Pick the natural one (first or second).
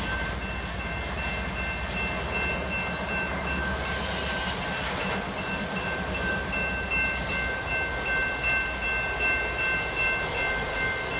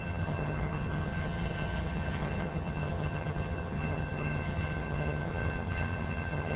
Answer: first